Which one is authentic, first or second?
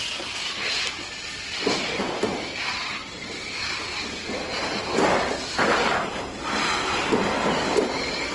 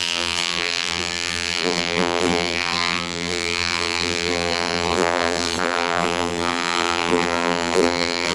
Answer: first